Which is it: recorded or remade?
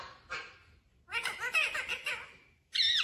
recorded